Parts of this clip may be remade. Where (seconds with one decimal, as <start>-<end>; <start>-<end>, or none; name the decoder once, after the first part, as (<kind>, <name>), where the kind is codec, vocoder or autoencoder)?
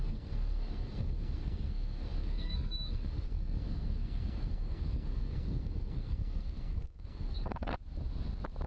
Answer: 0.0-7.7 (codec, SNAC)